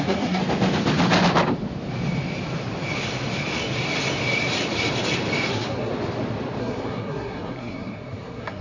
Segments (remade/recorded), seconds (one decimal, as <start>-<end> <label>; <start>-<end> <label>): 0.0-0.4 remade; 0.4-5.5 recorded; 5.5-5.9 remade; 5.9-6.6 recorded; 6.6-8.6 remade